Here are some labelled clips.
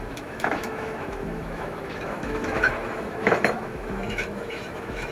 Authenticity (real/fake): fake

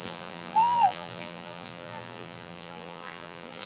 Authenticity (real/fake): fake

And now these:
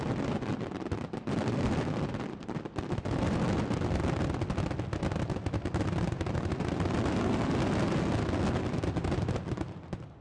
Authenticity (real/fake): real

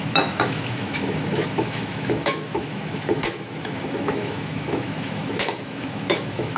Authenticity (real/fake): fake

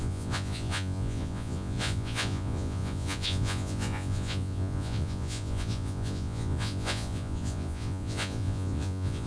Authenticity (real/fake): fake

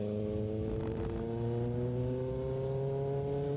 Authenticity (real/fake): real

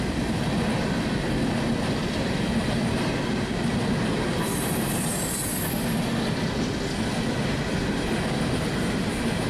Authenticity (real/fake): real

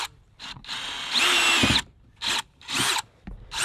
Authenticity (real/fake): real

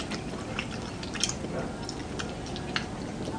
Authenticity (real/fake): real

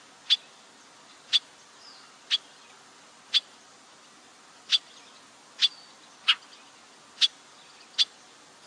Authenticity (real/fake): real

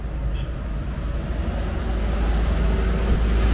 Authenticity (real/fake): real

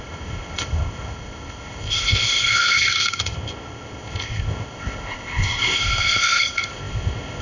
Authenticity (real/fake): fake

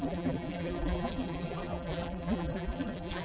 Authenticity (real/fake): fake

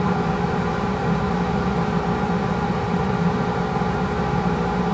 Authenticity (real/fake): fake